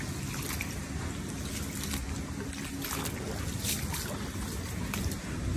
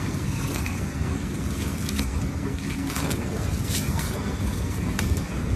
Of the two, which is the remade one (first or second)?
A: second